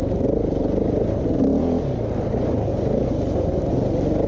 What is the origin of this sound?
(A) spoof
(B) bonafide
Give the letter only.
B